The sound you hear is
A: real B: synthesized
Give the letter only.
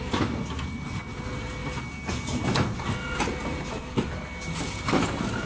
A